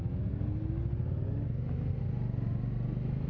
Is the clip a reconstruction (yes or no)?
no